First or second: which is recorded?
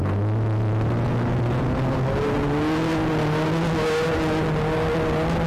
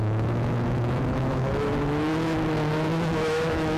first